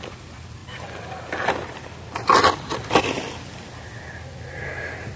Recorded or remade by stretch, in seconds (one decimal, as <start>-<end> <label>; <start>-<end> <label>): 0.0-5.2 recorded

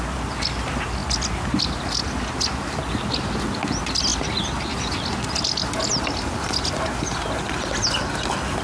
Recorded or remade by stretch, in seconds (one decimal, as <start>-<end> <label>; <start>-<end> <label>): 0.0-8.6 recorded